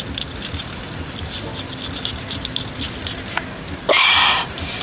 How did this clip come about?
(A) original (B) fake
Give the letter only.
A